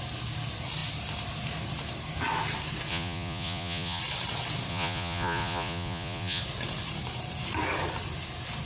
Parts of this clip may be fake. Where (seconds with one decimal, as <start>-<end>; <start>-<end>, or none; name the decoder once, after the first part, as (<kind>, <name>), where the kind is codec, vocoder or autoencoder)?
2.9-4.0 (vocoder, Vocos); 4.7-6.4

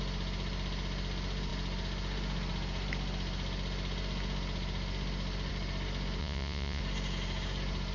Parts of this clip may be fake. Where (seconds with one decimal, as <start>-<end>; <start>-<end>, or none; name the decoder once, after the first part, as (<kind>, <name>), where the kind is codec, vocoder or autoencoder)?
6.2-6.8 (vocoder, Vocos)